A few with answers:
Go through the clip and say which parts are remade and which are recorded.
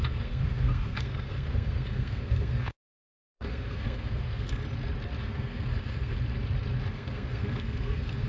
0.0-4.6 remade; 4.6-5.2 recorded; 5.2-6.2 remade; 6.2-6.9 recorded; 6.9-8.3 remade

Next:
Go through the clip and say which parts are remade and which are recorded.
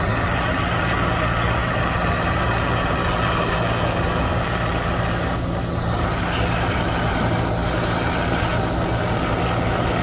0.0-10.0 recorded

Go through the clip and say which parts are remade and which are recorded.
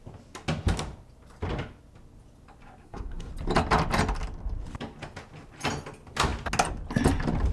0.0-2.8 recorded; 2.8-3.3 remade; 3.3-7.5 recorded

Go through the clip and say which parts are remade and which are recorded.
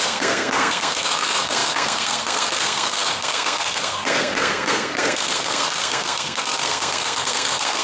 0.0-7.8 remade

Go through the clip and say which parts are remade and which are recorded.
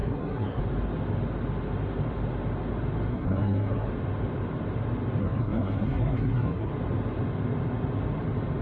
0.0-0.6 remade; 0.6-3.1 recorded; 3.1-3.9 remade; 3.9-5.2 recorded; 5.2-6.7 remade; 6.7-8.6 recorded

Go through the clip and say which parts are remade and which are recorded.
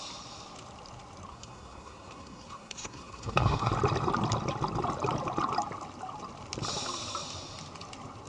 0.0-1.3 recorded; 1.3-3.7 remade; 3.7-8.3 recorded